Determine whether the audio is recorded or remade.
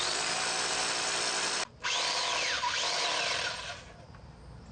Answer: recorded